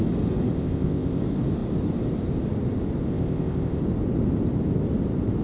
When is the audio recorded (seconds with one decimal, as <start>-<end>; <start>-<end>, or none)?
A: 0.0-0.5; 1.2-3.1; 3.8-5.4